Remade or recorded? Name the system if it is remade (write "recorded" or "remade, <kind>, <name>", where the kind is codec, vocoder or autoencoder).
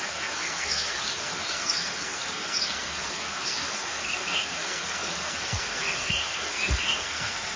remade, codec, SNAC